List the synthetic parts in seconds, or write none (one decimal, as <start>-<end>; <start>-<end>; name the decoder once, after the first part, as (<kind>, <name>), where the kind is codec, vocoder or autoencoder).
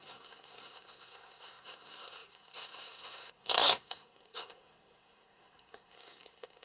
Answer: 0.0-6.6 (codec, SNAC)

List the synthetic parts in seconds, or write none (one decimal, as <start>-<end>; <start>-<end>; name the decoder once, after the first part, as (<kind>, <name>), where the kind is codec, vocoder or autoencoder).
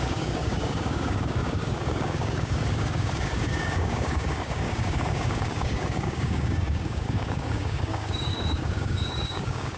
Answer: 0.0-9.8 (codec, DAC)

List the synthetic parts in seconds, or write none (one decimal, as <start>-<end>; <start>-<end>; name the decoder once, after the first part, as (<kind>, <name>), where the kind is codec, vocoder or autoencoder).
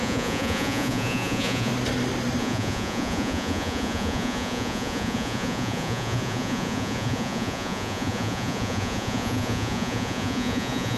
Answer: 0.0-1.7 (vocoder, Vocos); 2.4-11.0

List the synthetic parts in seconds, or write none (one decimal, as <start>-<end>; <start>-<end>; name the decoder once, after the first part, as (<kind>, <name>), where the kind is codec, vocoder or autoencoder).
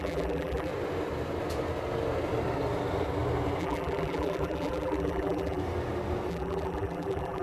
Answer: 0.0-0.7 (vocoder, BigVGAN v2); 3.6-5.6; 6.3-7.4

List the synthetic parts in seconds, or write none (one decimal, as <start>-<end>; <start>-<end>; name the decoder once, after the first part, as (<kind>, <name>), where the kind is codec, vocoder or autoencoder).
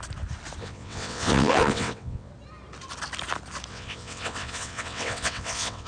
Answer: 0.6-2.3 (vocoder, WaveNeXt); 3.7-5.9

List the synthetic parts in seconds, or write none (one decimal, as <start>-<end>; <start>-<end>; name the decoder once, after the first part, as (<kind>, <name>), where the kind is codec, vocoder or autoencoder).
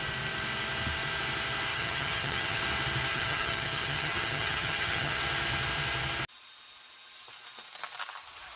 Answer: 1.7-2.6 (vocoder, HiFi-GAN); 3.1-5.2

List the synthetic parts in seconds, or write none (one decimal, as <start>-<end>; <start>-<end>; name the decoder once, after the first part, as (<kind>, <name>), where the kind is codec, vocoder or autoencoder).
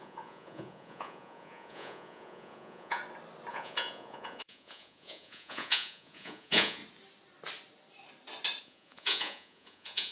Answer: 0.0-3.0 (vocoder, Vocos); 3.5-6.8; 8.6-10.1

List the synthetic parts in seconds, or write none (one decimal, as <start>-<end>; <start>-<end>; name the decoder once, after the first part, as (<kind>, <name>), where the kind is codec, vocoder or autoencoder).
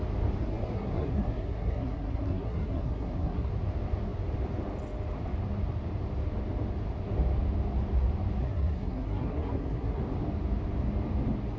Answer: 0.4-3.5 (codec, SNAC); 8.4-10.0